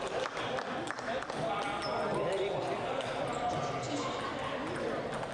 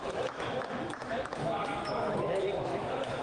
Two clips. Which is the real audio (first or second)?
first